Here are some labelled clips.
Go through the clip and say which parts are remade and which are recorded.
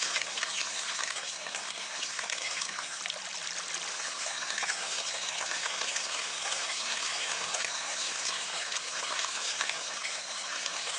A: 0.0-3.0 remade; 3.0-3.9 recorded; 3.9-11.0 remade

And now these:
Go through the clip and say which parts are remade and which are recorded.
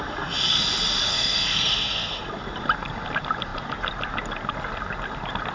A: 0.0-1.1 recorded; 1.1-2.2 remade; 2.2-5.5 recorded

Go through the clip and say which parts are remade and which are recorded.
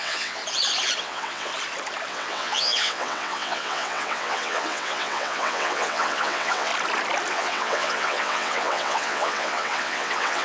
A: 0.0-0.4 remade; 0.4-1.0 recorded; 1.0-1.5 remade; 1.5-2.1 recorded; 2.1-6.7 remade; 6.7-7.3 recorded; 7.3-10.4 remade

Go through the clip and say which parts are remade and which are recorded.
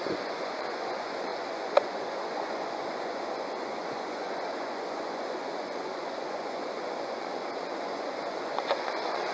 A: 0.0-9.3 remade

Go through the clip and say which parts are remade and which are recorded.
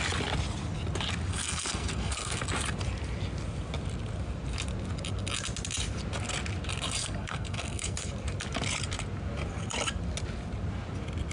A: 0.0-1.3 recorded; 1.3-2.4 remade; 2.4-7.0 recorded; 7.0-8.1 remade; 8.1-11.3 recorded